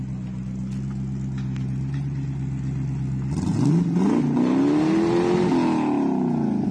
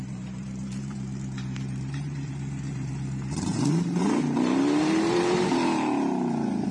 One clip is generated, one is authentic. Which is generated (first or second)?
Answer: second